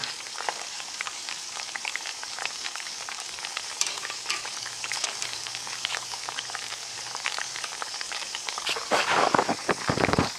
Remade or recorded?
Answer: remade